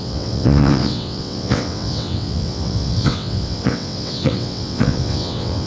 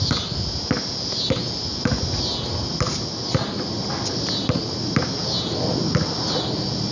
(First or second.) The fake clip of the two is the first